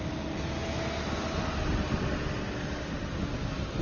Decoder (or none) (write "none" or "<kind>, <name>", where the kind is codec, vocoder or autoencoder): none